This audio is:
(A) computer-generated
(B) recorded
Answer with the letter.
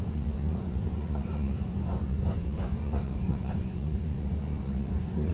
A